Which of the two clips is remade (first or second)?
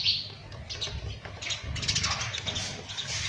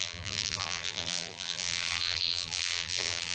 second